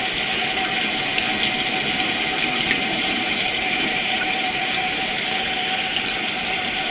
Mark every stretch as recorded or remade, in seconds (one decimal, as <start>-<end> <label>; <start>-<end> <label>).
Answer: 0.0-1.1 remade; 1.1-2.5 recorded; 2.5-5.9 remade; 5.9-6.9 recorded